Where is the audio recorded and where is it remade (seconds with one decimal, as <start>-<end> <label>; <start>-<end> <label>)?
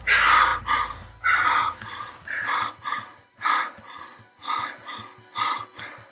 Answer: 0.0-6.1 recorded